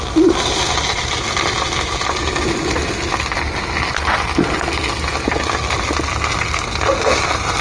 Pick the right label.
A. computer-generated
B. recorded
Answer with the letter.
B